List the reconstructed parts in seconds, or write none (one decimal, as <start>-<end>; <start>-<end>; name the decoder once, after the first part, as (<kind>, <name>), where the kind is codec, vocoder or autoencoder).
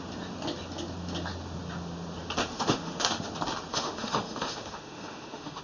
2.4-3.3 (autoencoder, DAC-VAE); 3.7-5.6